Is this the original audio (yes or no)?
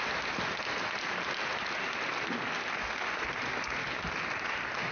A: yes